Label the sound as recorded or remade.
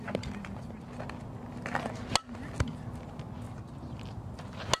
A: recorded